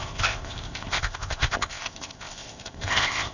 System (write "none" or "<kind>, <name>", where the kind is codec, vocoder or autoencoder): codec, ZipCodec